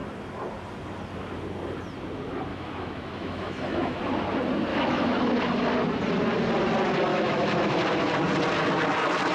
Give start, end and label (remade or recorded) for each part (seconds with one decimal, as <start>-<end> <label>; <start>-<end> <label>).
0.0-2.5 recorded; 2.5-4.0 remade; 4.0-4.7 recorded; 4.7-5.2 remade; 5.2-7.1 recorded; 7.1-7.7 remade; 7.7-9.3 recorded